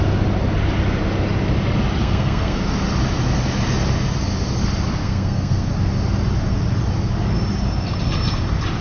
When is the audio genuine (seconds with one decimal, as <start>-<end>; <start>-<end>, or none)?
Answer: 0.0-2.0; 2.6-5.0; 5.7-8.8